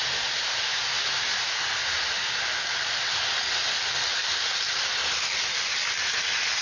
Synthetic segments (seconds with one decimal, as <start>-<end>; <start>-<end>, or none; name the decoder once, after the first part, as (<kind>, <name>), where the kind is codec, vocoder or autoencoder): 4.2-5.6 (vocoder, BigVGAN v2)